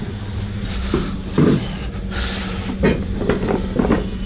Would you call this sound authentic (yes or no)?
yes